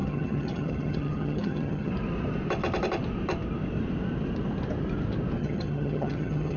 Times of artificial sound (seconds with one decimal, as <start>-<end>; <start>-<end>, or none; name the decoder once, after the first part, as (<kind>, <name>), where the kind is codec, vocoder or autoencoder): 0.0-1.9 (vocoder, HiFi-GAN); 5.4-6.6